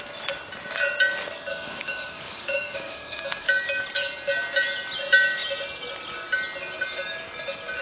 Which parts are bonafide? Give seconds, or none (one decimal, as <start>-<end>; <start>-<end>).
0.0-1.5; 3.5-7.8